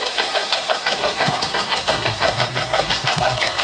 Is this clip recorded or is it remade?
remade